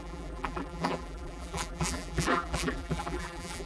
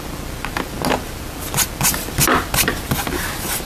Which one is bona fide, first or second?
second